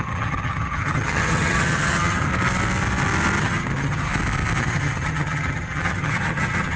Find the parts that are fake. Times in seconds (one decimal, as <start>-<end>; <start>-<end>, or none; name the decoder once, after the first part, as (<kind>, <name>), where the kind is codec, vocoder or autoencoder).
0.0-2.3 (vocoder, HiFi-GAN); 3.4-4.1; 4.6-6.8